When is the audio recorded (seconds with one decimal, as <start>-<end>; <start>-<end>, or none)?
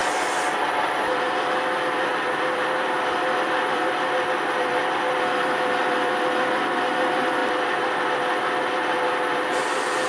none